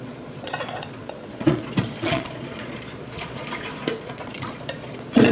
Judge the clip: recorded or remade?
remade